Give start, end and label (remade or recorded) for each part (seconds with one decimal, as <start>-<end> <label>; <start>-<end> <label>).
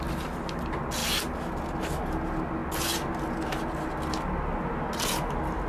0.0-5.7 recorded